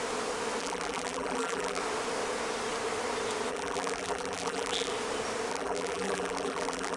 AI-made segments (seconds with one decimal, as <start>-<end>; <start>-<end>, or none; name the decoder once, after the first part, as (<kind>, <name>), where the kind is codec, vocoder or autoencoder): 0.6-1.8 (vocoder, BigVGAN v2); 3.5-4.9; 5.5-7.0